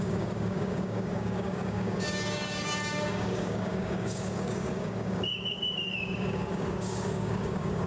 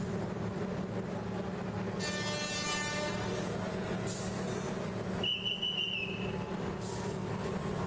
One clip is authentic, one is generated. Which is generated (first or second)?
first